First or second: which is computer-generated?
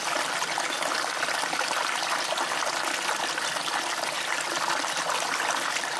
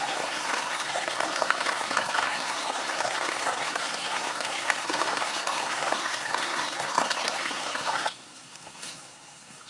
second